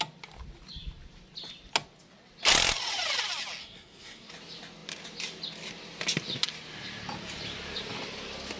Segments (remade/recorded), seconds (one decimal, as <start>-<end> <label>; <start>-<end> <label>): 0.0-3.6 recorded; 3.6-4.3 remade; 4.3-8.6 recorded